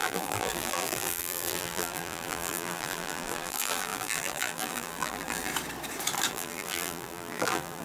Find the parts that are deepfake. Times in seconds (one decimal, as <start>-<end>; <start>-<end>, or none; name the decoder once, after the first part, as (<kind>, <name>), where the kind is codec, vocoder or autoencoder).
0.0-5.5 (vocoder, BigVGAN v2); 6.3-7.8